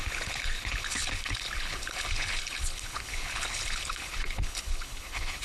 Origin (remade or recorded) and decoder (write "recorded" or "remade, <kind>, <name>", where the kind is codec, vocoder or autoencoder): remade, codec, HILCodec